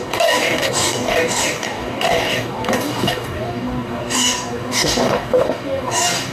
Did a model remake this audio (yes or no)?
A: yes